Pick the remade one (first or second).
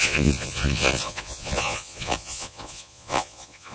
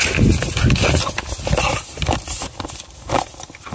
first